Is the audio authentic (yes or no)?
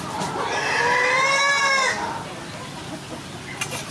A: yes